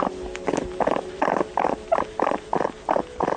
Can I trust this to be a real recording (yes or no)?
no